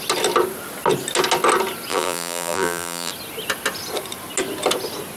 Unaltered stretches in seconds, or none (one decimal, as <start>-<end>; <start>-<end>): 0.0-1.9; 3.1-5.2